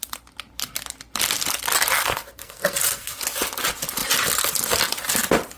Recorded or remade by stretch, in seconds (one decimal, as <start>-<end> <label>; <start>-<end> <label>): 0.0-2.0 recorded; 2.0-3.2 remade; 3.2-5.6 recorded